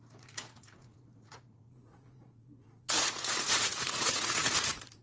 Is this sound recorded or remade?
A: remade